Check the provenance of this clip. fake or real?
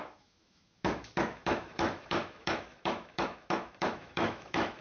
fake